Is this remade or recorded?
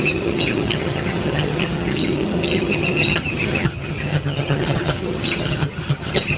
remade